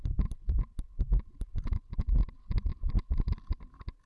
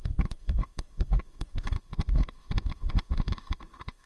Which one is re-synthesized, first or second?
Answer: second